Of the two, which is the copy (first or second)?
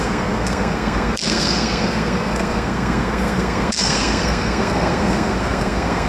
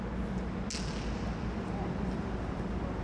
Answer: first